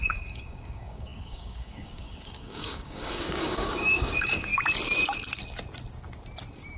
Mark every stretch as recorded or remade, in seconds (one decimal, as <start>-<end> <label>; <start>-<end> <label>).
0.0-4.5 remade; 4.5-6.8 recorded